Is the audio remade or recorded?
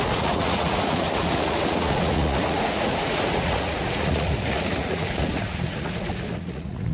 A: remade